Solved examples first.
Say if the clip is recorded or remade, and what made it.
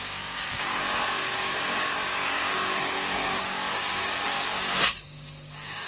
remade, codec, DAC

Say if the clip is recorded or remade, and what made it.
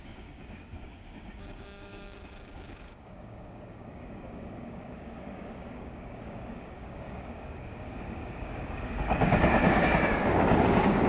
remade, codec, DAC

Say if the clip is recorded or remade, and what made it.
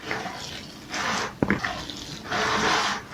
recorded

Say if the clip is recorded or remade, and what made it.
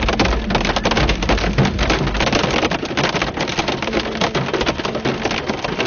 recorded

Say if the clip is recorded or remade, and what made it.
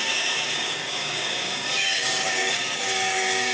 remade, codec, DAC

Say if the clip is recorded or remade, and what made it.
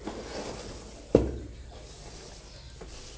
recorded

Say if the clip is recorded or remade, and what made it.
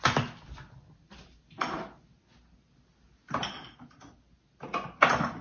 recorded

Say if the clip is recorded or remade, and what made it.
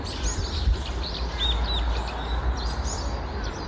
recorded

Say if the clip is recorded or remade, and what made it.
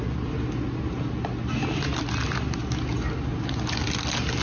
recorded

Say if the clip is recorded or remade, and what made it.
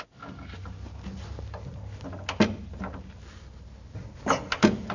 recorded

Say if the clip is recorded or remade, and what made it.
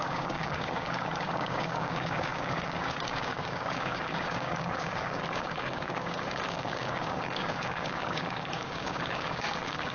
remade, codec, DAC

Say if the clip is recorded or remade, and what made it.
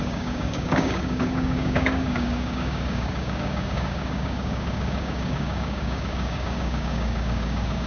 remade, codec, DAC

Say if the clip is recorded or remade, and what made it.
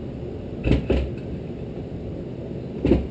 recorded